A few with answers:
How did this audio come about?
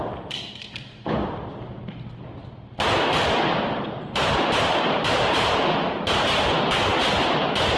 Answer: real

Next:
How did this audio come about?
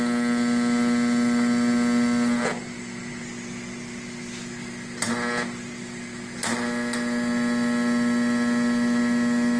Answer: real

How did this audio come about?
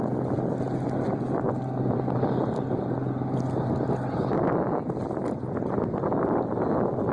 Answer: real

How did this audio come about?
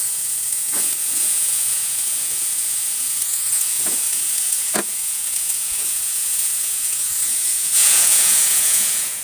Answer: fake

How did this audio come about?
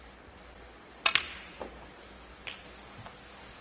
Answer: real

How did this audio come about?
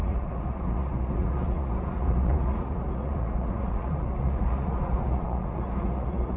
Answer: fake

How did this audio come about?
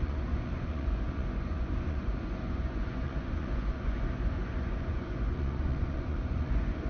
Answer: fake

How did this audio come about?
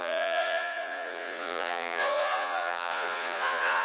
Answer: fake